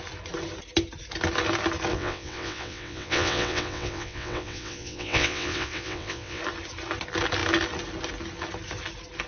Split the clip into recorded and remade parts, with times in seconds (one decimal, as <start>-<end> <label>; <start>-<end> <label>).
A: 0.0-1.9 recorded; 1.9-6.4 remade; 6.4-9.3 recorded